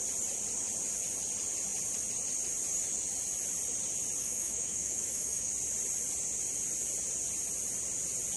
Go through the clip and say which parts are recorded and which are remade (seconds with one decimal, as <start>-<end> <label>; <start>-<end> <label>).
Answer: 0.0-4.2 recorded; 4.2-5.5 remade; 5.5-8.4 recorded